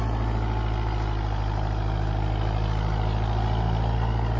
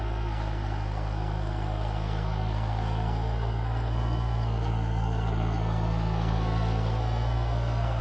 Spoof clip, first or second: second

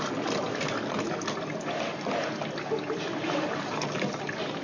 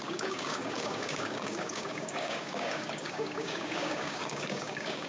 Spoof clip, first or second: second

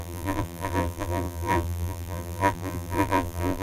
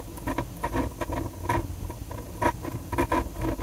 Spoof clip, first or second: first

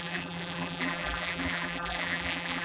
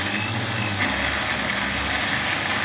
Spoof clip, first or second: first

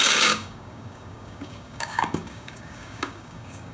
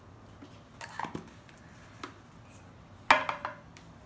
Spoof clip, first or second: first